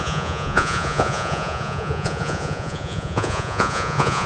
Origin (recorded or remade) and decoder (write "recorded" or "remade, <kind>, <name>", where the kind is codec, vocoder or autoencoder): remade, vocoder, Vocos